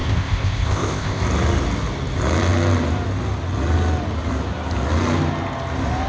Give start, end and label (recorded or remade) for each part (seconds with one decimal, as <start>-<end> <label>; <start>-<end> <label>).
0.0-1.2 remade; 1.2-6.1 recorded